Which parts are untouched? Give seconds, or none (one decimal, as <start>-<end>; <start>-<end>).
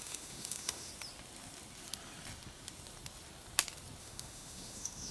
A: 0.9-4.0